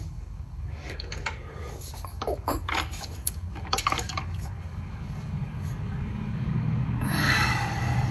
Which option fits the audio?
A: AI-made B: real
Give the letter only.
A